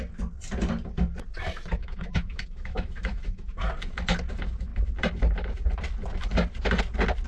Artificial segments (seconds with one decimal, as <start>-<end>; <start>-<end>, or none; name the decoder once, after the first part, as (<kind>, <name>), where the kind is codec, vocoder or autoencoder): 1.8-3.7 (autoencoder, DAC-VAE)